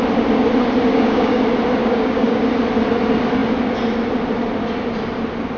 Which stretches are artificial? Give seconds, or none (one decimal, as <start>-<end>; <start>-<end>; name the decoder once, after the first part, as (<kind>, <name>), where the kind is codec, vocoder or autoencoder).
0.9-1.4 (codec, DAC); 1.8-2.4